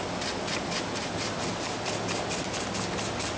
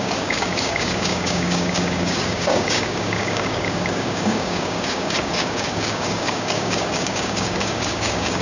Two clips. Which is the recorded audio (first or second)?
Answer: first